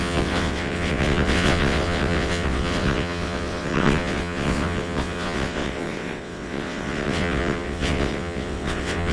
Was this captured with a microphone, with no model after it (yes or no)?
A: no